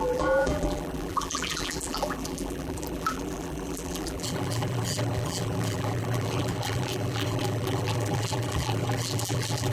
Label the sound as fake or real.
fake